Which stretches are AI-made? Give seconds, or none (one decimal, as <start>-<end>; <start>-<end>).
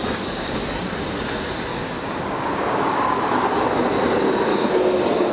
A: 0.0-0.9; 1.7-3.2; 4.5-5.3